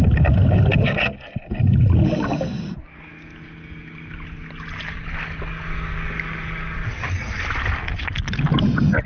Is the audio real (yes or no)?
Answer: yes